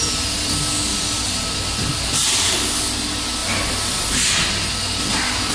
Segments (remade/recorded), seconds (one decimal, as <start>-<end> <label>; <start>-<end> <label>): 0.0-0.9 recorded; 0.9-1.9 remade; 1.9-5.5 recorded